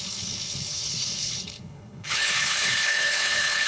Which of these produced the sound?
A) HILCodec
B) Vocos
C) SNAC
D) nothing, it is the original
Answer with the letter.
A